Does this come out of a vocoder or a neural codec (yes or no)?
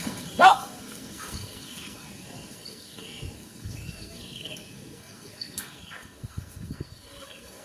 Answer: yes